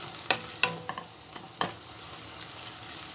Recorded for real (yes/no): yes